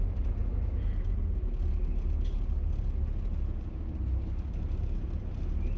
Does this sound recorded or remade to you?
recorded